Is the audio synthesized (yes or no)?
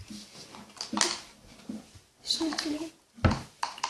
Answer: no